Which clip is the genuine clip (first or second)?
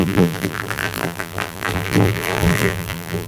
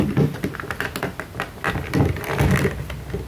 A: second